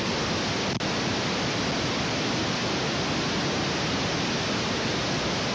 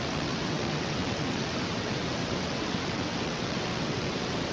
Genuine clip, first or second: first